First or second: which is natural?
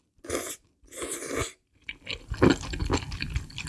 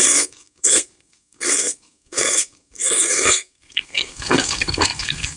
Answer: first